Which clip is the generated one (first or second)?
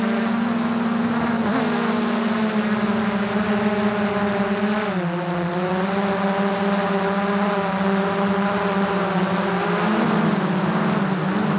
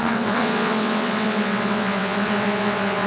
second